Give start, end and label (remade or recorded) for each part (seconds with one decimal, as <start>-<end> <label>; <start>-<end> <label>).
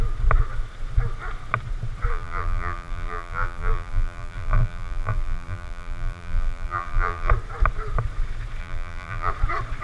0.0-2.1 recorded; 2.1-7.3 remade; 7.3-8.6 recorded; 8.6-9.3 remade; 9.3-9.8 recorded